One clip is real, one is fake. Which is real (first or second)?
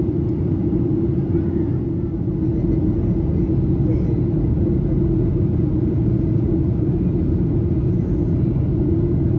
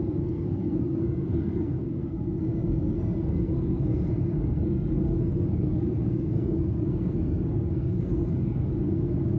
first